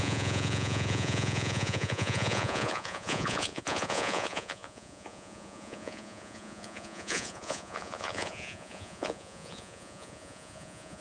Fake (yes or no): yes